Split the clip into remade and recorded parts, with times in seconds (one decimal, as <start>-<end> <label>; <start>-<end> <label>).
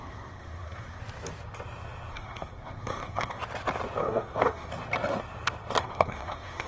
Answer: 0.0-1.0 remade; 1.0-2.1 recorded; 2.1-3.4 remade; 3.4-4.0 recorded; 4.0-4.7 remade; 4.7-5.8 recorded; 5.8-6.7 remade